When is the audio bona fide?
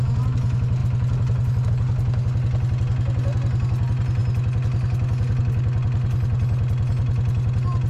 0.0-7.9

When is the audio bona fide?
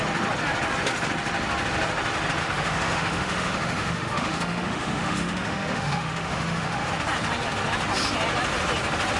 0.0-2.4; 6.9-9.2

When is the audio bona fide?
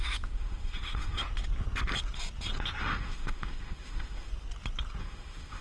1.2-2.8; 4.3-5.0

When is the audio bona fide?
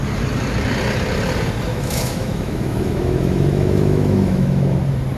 0.0-1.7; 4.8-5.2